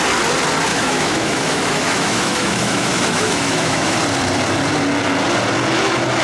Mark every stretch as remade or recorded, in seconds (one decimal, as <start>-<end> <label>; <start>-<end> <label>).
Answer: 0.0-0.7 recorded; 0.7-4.0 remade; 4.0-6.2 recorded